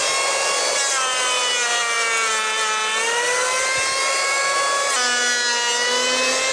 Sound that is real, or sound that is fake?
real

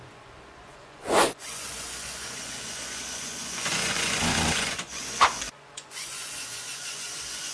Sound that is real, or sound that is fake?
fake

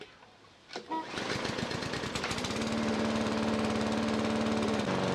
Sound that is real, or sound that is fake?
real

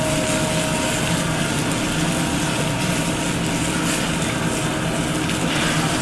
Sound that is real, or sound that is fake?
real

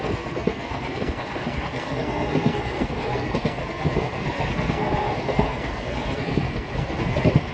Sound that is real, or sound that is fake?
fake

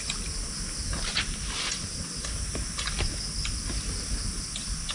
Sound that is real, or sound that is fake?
real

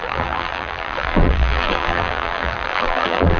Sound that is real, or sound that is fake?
fake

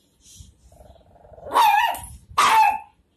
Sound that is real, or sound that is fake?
real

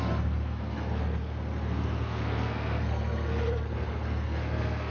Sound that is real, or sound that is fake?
fake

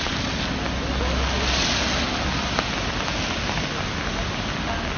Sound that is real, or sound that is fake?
real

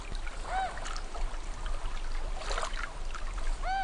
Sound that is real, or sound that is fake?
real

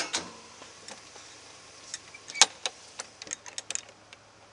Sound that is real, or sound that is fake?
real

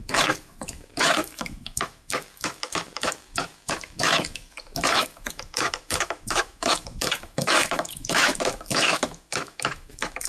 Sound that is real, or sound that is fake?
fake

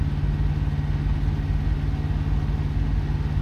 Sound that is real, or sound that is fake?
real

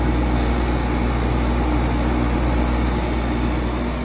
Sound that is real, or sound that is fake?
real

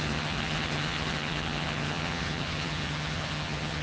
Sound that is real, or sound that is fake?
fake